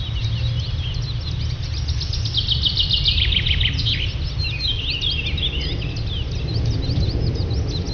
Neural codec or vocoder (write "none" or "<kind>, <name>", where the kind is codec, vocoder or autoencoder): none